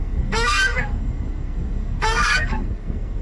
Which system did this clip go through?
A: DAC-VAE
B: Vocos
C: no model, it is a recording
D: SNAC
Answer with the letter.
D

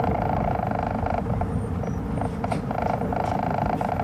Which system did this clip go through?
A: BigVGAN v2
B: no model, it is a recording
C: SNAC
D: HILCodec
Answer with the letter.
A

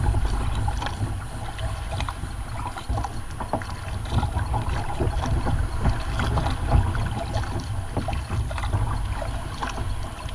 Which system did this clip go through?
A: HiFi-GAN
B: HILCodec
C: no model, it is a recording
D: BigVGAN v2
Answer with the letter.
C